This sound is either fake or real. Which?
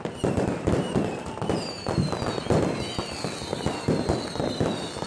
real